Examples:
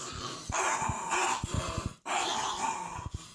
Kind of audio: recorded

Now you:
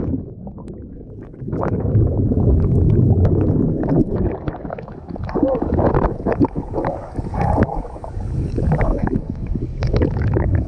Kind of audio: remade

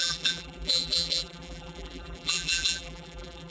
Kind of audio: remade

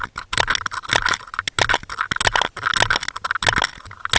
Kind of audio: recorded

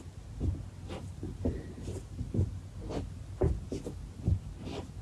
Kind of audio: recorded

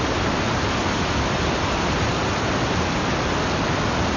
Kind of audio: recorded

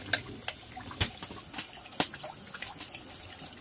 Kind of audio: recorded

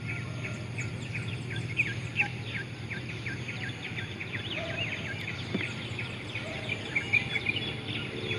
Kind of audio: recorded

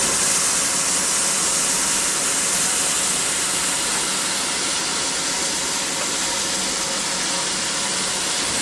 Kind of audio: recorded